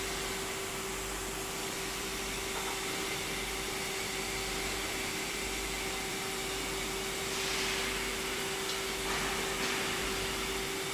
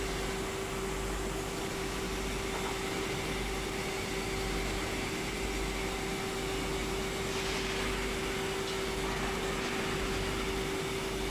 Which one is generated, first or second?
first